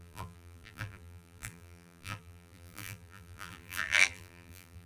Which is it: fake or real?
fake